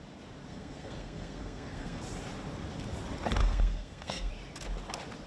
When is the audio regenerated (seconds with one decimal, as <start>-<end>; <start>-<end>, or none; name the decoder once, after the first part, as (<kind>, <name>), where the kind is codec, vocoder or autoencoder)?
0.5-2.0 (codec, SNAC); 3.4-4.3